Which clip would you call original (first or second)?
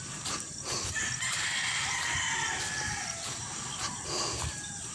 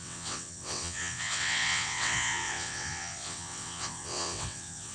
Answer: first